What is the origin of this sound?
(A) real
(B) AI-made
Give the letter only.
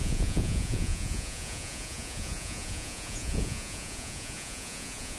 B